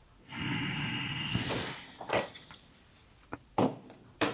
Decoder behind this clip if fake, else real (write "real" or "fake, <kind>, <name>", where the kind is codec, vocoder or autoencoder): real